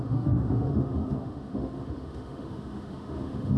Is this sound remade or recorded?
remade